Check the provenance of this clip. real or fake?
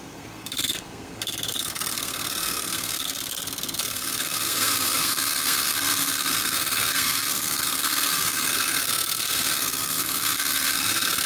fake